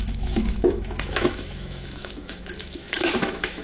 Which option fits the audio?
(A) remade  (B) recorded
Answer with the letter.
A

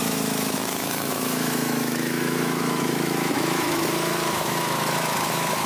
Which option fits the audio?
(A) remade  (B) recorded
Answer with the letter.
A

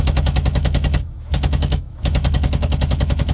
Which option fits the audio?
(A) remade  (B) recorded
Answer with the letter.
A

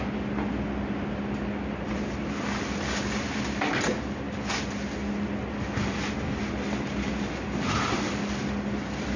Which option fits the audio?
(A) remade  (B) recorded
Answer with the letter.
B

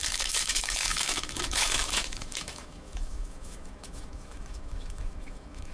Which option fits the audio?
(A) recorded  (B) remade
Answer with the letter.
B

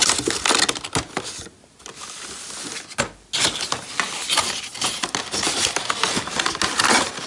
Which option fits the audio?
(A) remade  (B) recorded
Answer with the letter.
B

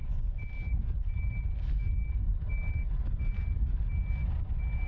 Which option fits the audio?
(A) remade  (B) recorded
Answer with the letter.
B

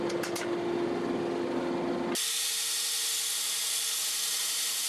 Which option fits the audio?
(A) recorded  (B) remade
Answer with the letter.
A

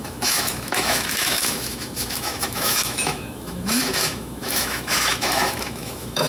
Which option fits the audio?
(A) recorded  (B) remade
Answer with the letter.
B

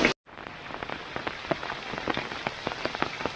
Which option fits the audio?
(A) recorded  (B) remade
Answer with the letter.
A